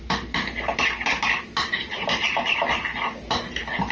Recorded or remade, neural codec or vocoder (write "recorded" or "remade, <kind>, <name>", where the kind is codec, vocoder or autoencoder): recorded